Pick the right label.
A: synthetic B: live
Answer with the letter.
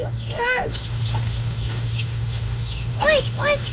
A